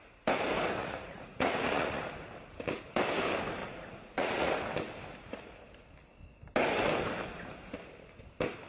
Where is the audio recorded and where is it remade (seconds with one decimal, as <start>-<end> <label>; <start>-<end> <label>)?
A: 0.0-0.8 recorded; 0.8-2.0 remade; 2.0-3.6 recorded; 3.6-4.5 remade; 4.5-8.7 recorded